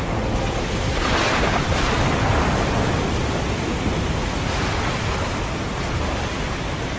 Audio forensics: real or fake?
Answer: real